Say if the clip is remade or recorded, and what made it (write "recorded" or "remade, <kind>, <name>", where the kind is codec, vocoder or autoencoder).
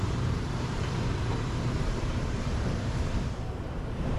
remade, vocoder, BigVGAN v2